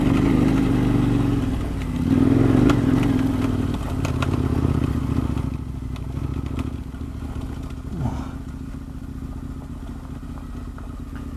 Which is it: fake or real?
real